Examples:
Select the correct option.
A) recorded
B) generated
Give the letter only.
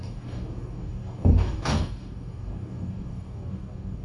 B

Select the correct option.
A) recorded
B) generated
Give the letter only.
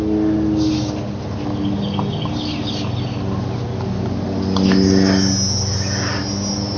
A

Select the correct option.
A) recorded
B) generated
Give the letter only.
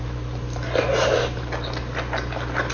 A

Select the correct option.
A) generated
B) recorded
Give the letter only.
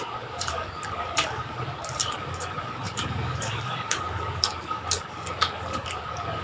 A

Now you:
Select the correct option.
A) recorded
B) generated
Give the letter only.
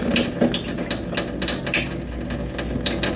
A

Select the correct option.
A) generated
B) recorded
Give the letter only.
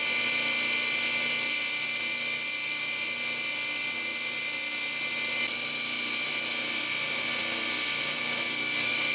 B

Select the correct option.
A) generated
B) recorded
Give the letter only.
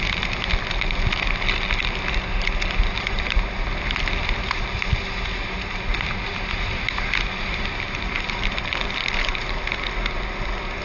B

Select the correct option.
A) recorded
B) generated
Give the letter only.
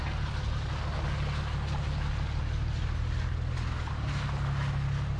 A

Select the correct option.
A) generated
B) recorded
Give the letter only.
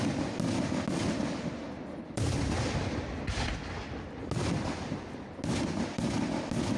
B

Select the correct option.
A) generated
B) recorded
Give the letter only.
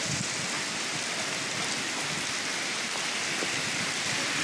B